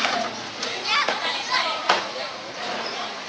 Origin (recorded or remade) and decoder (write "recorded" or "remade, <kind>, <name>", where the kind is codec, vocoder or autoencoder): remade, vocoder, Vocos